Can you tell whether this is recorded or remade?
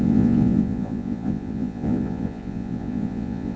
remade